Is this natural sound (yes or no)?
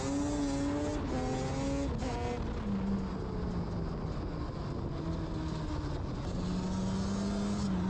yes